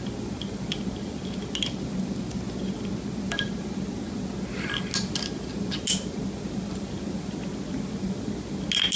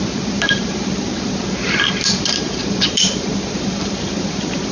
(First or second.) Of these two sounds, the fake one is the second